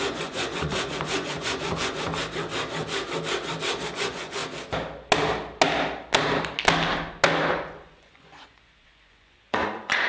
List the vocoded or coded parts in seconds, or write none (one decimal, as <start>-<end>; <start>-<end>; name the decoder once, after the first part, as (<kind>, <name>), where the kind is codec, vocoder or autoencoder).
0.0-2.1 (vocoder, Vocos); 3.9-4.4; 7.5-10.1